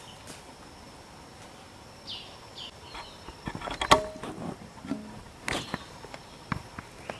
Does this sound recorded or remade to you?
recorded